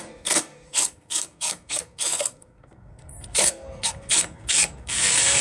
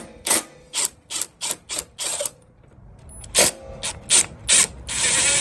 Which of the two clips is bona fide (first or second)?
second